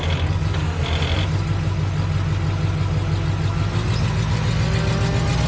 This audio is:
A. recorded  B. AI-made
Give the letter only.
A